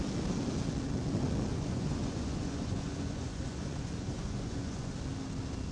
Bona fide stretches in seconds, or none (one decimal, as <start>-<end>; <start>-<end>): 0.0-1.5; 4.9-5.7